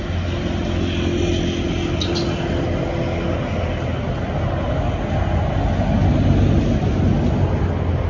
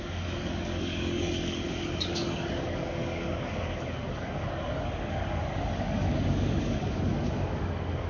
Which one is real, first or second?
first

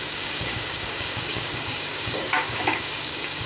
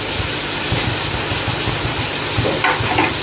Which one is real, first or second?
second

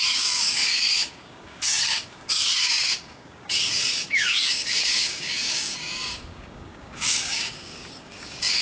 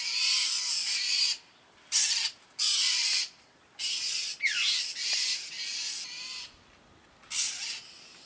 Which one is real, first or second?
second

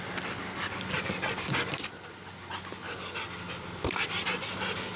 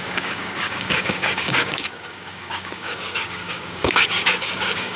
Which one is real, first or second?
first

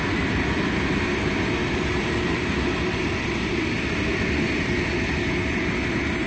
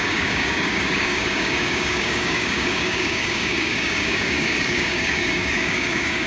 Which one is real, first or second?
first